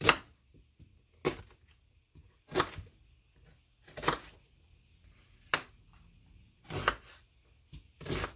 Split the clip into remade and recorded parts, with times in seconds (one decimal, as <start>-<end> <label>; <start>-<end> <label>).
0.0-8.4 recorded